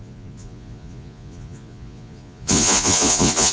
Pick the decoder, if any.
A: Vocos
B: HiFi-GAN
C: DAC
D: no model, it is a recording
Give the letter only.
A